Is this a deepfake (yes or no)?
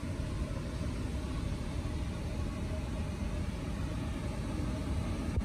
no